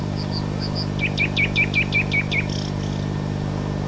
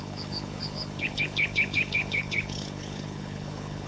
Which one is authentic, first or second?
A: first